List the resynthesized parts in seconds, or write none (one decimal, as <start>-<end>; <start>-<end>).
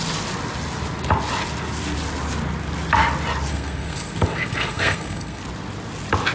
3.5-5.4